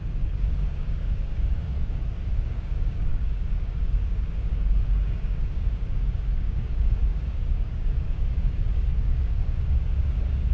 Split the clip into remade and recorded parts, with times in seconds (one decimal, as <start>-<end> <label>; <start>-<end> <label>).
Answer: 0.0-10.5 remade